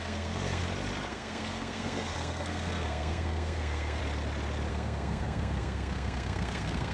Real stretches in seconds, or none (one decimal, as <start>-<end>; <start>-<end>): 0.6-1.1; 4.0-4.7